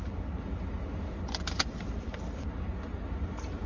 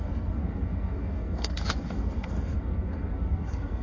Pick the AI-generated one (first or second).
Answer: second